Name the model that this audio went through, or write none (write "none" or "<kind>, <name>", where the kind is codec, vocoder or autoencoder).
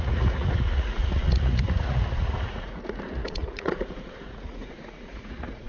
vocoder, Vocos